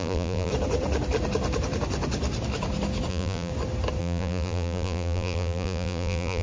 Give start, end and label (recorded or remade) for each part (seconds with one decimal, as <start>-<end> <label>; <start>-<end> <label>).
0.0-0.5 remade; 0.5-3.1 recorded; 3.1-3.5 remade; 3.5-4.0 recorded; 4.0-6.4 remade